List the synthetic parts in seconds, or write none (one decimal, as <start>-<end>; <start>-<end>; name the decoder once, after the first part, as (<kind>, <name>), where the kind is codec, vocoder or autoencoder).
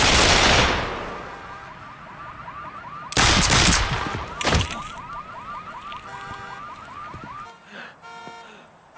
none